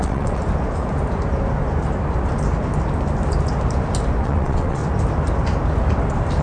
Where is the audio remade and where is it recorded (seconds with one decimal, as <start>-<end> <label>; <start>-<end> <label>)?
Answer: 0.0-0.4 remade; 0.4-4.2 recorded; 4.2-4.8 remade; 4.8-6.4 recorded